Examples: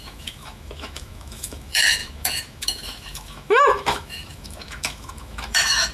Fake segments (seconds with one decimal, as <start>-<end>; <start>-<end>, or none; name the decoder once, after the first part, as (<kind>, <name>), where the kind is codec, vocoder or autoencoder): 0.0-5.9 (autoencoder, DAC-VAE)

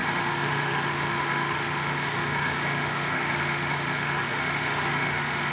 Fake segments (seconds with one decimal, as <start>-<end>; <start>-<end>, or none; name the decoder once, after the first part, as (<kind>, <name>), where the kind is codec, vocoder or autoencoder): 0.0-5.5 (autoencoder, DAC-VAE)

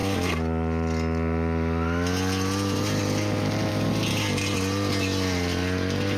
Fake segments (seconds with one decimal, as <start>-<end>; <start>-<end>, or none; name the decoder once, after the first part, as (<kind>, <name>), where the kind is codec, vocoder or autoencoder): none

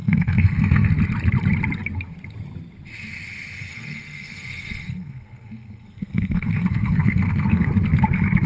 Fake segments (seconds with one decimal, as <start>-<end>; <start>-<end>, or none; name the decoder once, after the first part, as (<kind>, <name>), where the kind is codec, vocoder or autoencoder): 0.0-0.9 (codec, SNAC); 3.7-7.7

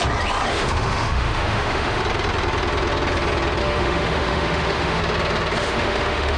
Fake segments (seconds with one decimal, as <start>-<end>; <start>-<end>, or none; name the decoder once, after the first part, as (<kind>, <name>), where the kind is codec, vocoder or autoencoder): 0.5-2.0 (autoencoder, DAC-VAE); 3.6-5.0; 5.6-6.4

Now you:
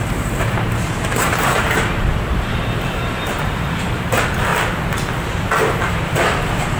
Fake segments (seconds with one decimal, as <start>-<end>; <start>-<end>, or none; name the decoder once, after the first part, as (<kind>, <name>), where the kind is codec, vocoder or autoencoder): 0.0-4.5 (vocoder, BigVGAN v2); 5.9-6.8